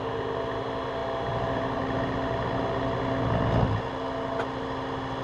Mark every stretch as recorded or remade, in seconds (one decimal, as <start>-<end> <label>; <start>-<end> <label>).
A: 0.0-1.0 recorded; 1.0-1.8 remade; 1.8-5.2 recorded